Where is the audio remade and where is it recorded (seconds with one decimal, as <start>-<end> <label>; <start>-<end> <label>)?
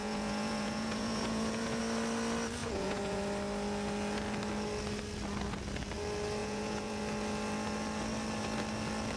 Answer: 0.0-1.8 remade; 1.8-2.6 recorded; 2.6-3.2 remade; 3.2-6.4 recorded; 6.4-7.0 remade; 7.0-9.2 recorded